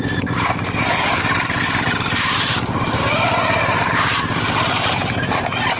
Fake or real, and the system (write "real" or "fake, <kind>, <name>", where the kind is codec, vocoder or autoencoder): real